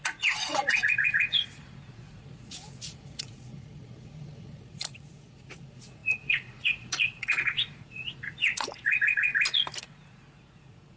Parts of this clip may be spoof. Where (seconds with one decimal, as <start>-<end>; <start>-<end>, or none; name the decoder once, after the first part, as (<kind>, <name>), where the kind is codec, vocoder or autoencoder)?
0.0-9.3 (vocoder, Vocos); 9.8-11.0